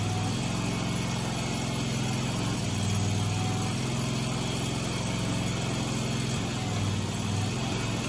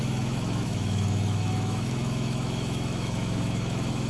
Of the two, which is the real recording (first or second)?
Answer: first